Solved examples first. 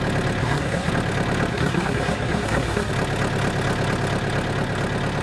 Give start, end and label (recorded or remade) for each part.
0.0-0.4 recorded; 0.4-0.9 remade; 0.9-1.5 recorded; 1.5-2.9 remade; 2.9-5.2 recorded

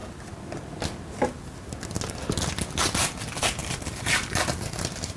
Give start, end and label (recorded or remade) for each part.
0.0-3.6 recorded; 3.6-5.2 remade

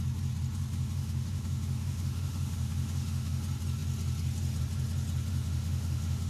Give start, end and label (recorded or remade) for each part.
0.0-0.7 recorded; 0.7-3.4 remade; 3.4-5.3 recorded; 5.3-6.3 remade